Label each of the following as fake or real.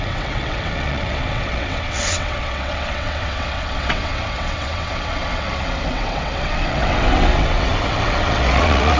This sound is fake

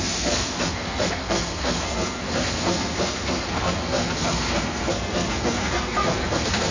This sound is fake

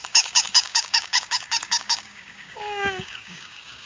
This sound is fake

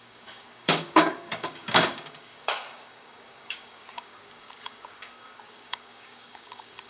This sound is fake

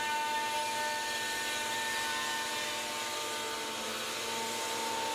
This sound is real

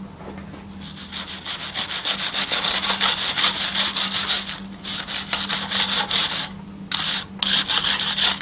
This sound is real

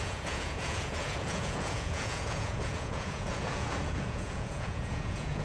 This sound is fake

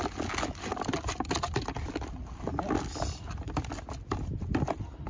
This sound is real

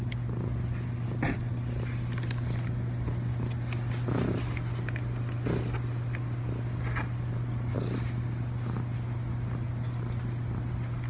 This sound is real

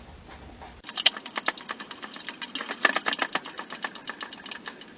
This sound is real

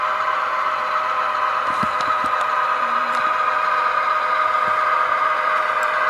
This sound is fake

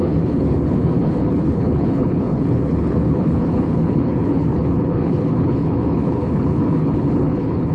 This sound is fake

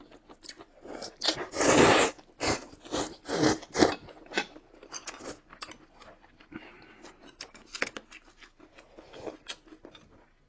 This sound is real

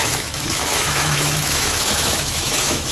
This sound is fake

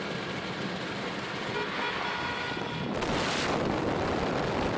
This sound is real